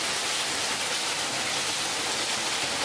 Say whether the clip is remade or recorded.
recorded